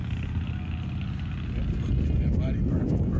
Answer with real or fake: real